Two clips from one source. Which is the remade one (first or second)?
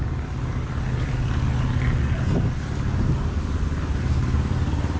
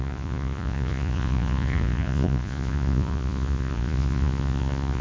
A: second